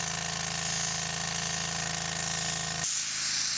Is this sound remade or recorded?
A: recorded